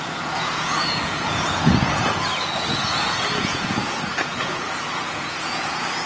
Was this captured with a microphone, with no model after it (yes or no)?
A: no